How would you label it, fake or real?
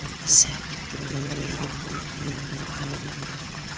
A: fake